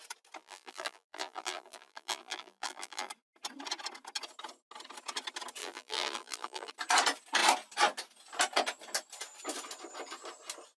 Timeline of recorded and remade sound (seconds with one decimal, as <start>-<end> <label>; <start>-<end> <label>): 0.0-0.4 recorded; 0.4-3.1 remade; 3.1-5.6 recorded; 5.6-6.7 remade; 6.7-10.8 recorded